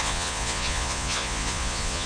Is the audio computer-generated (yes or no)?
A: yes